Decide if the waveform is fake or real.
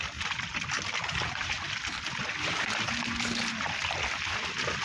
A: real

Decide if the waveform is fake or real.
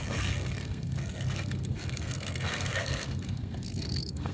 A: fake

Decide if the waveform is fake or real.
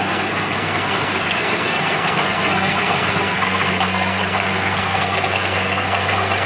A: fake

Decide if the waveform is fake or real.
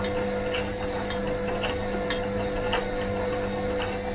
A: real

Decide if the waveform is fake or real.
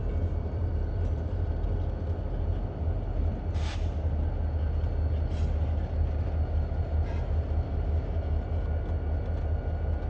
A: real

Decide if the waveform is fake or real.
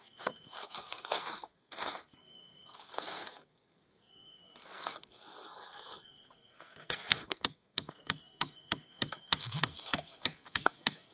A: fake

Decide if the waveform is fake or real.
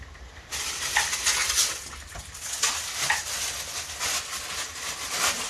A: real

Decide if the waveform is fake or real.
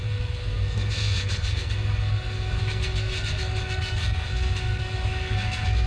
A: fake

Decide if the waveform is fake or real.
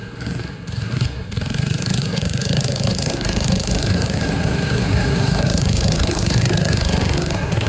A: fake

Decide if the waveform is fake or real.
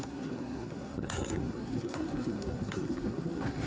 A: fake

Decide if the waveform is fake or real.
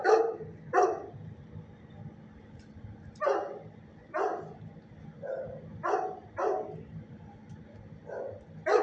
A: real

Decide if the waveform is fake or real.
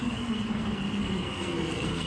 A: fake